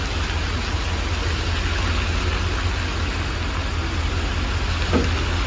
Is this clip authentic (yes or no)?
yes